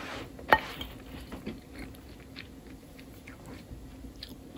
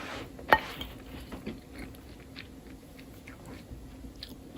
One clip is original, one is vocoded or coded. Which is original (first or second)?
second